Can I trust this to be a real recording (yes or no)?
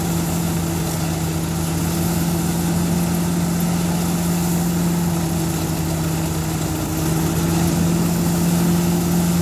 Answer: yes